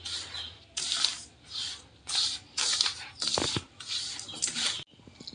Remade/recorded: recorded